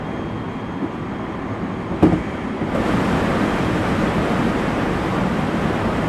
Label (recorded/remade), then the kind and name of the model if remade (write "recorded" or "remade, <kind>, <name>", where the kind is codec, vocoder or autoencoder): recorded